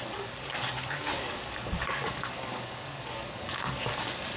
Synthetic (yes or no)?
yes